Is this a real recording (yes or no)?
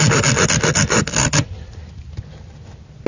yes